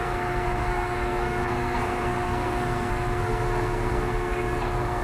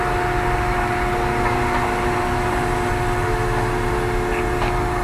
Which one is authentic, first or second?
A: second